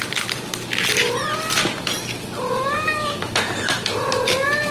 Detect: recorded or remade recorded